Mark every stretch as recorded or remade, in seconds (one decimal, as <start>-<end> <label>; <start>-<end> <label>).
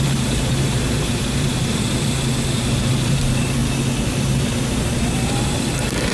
0.0-3.6 remade; 3.6-4.2 recorded; 4.2-6.1 remade